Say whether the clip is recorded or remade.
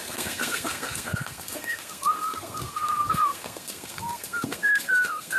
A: remade